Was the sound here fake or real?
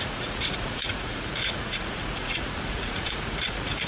fake